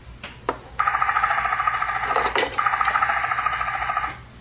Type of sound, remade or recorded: recorded